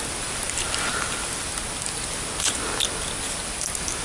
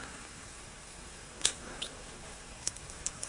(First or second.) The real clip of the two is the first